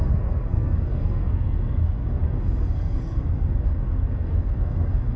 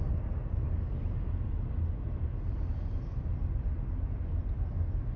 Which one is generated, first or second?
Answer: first